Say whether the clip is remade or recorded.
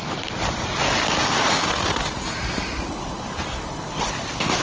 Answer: recorded